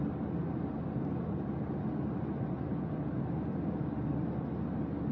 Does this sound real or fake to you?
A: real